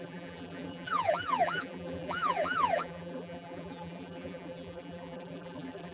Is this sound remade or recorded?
remade